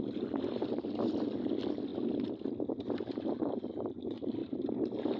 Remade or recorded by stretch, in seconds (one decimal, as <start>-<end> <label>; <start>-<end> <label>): 0.0-5.2 recorded